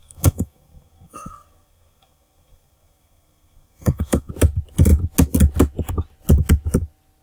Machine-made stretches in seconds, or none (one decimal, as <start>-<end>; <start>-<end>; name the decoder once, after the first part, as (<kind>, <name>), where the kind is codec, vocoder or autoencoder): 0.0-4.3 (codec, SNAC)